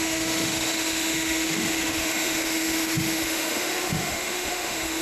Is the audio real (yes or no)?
no